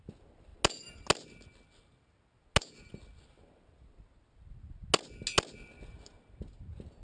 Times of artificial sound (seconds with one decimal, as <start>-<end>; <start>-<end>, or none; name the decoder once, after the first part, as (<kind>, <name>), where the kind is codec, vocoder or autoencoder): none